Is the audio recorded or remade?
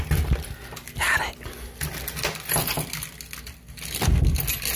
recorded